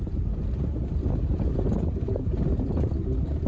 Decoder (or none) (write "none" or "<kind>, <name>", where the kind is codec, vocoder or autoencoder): vocoder, BigVGAN v2